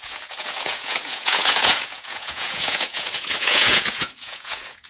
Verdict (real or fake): fake